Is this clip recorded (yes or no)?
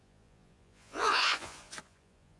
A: no